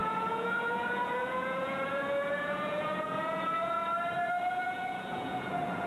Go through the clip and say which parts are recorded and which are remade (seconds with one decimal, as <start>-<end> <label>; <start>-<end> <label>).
0.0-3.8 remade; 3.8-4.5 recorded; 4.5-5.9 remade